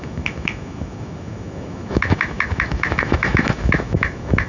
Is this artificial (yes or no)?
yes